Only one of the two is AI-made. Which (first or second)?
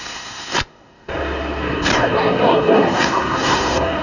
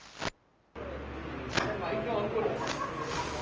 first